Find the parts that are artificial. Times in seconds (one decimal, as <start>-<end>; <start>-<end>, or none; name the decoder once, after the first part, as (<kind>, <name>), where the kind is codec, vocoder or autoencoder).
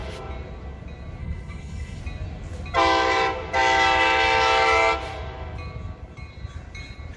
1.2-2.0 (codec, HILCodec)